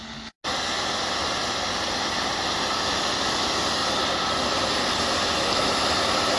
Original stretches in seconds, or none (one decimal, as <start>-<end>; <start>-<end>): 0.0-6.4